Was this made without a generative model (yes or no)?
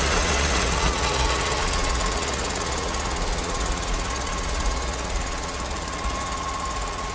no